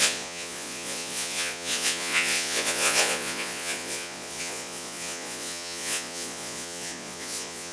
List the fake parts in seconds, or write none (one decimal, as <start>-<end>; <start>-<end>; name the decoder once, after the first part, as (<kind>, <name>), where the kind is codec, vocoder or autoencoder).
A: 0.0-7.7 (vocoder, Vocos)